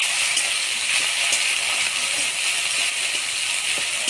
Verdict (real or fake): real